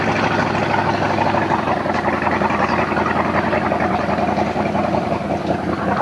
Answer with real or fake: real